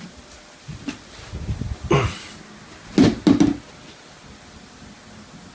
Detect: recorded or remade recorded